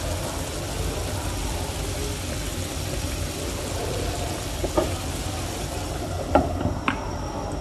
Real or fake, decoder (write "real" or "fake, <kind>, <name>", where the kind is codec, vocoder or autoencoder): real